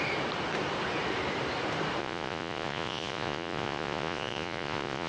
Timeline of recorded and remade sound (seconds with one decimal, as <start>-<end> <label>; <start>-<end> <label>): 0.0-2.0 recorded; 2.0-5.1 remade